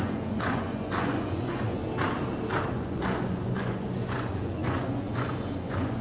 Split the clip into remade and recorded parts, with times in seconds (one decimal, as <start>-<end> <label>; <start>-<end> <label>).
0.0-1.8 remade; 1.8-2.7 recorded; 2.7-6.0 remade